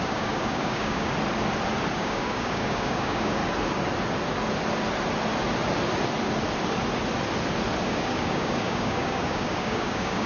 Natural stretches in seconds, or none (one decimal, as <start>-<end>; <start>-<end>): 1.1-1.9; 3.4-7.8